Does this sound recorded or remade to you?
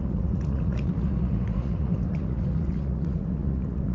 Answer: remade